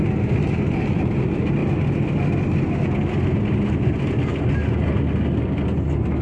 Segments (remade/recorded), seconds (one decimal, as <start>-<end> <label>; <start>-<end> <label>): 0.0-6.2 recorded